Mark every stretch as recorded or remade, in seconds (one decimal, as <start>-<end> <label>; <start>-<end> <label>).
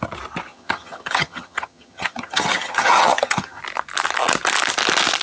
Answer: 0.0-0.5 recorded; 0.5-3.6 remade; 3.6-5.2 recorded